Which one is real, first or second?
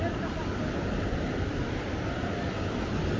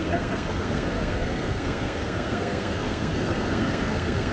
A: first